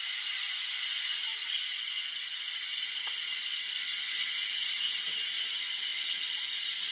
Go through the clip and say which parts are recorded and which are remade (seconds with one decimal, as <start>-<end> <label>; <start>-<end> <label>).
0.0-1.3 remade; 1.3-3.1 recorded; 3.1-3.6 remade; 3.6-4.5 recorded; 4.5-5.9 remade; 5.9-6.9 recorded